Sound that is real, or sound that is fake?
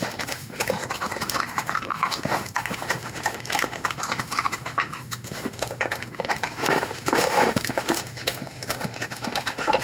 fake